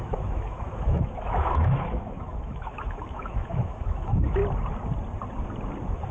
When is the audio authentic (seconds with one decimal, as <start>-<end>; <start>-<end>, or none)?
4.4-6.1